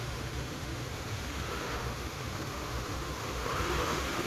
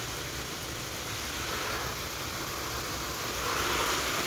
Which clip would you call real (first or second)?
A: second